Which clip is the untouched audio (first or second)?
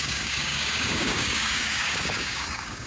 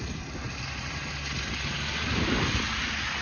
second